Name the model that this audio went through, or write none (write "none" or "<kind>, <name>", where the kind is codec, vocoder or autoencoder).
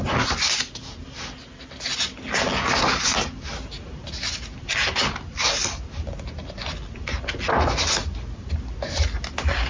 none